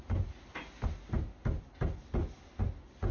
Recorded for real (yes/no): yes